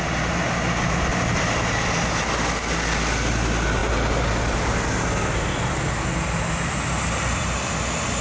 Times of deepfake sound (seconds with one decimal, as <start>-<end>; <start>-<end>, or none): none